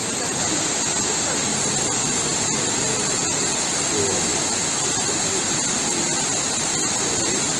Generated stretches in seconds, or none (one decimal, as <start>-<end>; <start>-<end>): none